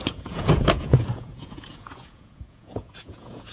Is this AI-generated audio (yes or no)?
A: yes